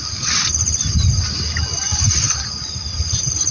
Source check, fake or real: real